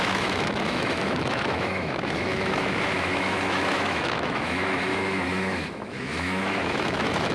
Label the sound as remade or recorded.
remade